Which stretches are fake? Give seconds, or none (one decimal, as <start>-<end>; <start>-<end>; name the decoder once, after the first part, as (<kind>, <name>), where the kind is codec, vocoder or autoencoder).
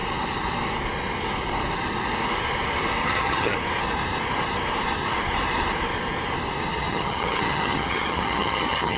3.0-3.5 (vocoder, HiFi-GAN); 6.7-9.0